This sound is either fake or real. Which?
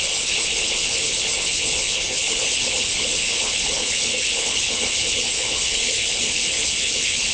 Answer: fake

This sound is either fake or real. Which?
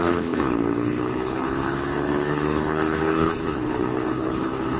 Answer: fake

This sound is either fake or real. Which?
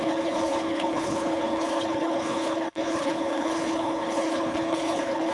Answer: fake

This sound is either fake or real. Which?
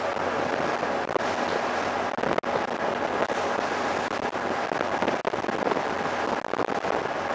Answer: real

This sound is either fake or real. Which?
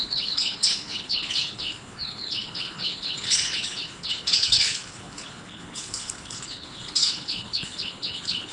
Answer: fake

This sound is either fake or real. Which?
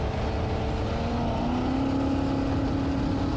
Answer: real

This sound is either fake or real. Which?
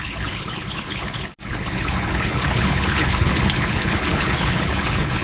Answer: fake